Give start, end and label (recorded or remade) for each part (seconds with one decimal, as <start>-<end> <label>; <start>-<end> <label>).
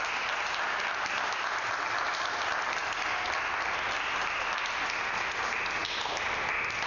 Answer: 0.0-6.9 recorded